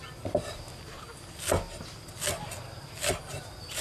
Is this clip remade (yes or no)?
no